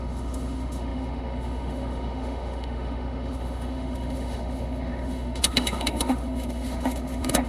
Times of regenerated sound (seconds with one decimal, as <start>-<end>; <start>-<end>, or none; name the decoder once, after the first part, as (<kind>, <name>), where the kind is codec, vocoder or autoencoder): 0.0-7.5 (autoencoder, DAC-VAE)